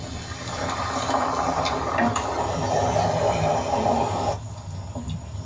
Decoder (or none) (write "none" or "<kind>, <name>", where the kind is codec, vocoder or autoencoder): none